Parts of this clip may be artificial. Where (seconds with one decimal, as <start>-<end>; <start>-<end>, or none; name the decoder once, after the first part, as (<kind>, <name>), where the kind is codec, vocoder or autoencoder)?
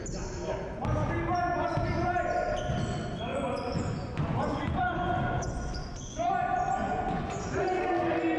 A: 3.3-6.3 (vocoder, Vocos); 6.8-7.8